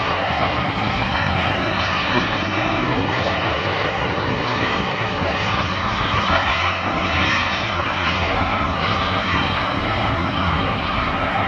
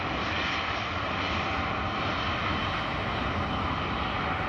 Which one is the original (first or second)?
second